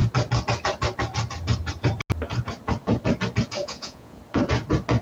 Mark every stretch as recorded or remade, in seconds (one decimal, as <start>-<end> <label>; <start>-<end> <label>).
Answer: 0.0-3.6 recorded; 3.6-4.2 remade; 4.2-5.0 recorded